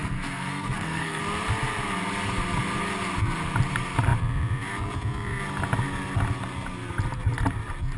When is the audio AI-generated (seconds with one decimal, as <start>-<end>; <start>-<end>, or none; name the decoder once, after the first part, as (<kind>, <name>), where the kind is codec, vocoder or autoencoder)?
0.0-1.2 (codec, SNAC)